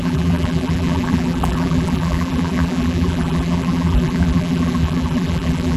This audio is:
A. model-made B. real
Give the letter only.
A